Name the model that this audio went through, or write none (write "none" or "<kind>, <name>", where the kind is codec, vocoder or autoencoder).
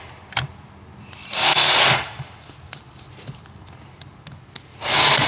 none